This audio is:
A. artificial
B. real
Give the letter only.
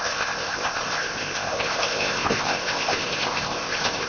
A